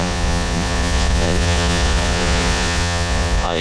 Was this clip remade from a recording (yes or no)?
yes